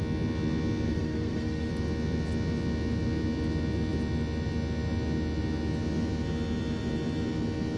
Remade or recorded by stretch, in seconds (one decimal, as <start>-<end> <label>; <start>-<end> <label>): 0.0-0.9 recorded; 0.9-1.7 remade; 1.7-7.8 recorded